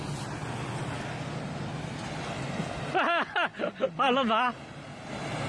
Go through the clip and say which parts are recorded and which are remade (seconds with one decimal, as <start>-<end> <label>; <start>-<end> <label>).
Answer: 0.0-3.5 recorded; 3.5-5.5 remade

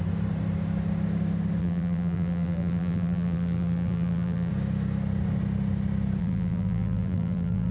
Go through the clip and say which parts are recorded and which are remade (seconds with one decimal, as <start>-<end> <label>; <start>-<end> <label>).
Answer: 0.0-1.6 recorded; 1.6-4.5 remade; 4.5-6.2 recorded; 6.2-7.7 remade

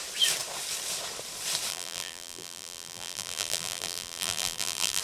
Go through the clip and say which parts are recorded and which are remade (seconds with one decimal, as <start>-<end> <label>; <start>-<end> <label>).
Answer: 0.0-1.7 recorded; 1.7-5.0 remade

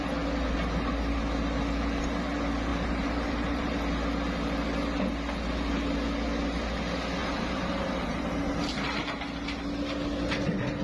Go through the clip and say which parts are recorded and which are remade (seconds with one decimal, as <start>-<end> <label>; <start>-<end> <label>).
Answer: 0.0-2.7 recorded; 2.7-3.8 remade; 3.8-7.2 recorded; 7.2-9.1 remade; 9.1-10.8 recorded

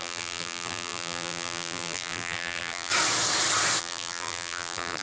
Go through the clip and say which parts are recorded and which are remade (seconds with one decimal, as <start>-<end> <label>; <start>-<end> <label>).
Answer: 0.0-2.9 remade; 2.9-3.8 recorded; 3.8-5.0 remade